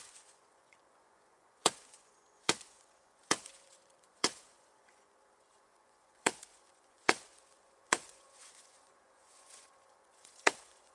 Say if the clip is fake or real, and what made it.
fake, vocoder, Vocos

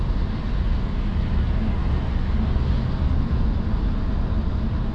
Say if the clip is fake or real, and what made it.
real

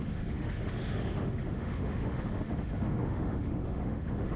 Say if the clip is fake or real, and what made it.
fake, autoencoder, DAC-VAE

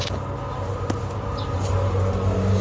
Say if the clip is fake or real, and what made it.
real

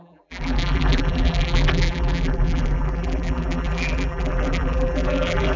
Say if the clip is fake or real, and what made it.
fake, vocoder, BigVGAN v2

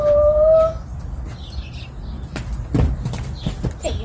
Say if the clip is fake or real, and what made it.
real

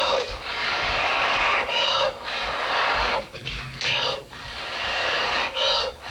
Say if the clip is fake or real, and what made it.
fake, codec, DAC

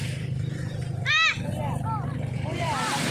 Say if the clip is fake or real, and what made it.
real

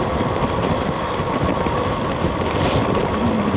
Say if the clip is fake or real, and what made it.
real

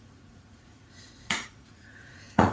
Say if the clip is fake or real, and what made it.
fake, vocoder, Vocos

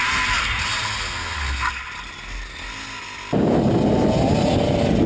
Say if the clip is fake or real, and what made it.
real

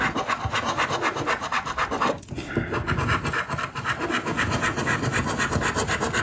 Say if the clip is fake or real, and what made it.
real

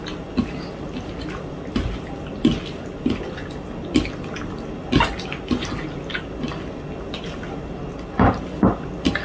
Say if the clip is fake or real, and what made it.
real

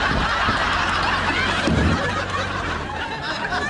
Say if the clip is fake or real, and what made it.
real